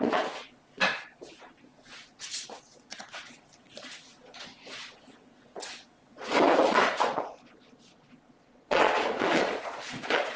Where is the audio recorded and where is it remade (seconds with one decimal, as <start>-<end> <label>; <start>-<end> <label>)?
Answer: 0.0-10.4 remade